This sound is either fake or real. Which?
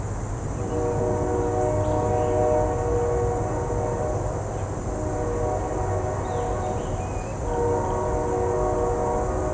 real